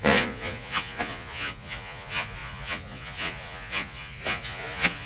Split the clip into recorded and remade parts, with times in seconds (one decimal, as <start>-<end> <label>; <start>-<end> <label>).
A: 0.0-5.1 remade

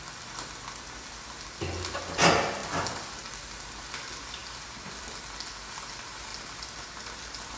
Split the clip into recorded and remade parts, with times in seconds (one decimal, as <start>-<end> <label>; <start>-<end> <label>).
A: 0.0-7.6 recorded